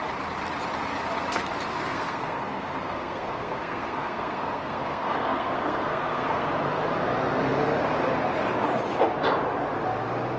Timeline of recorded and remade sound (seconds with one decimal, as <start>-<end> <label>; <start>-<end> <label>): 0.0-1.7 recorded; 1.7-6.5 remade; 6.5-10.4 recorded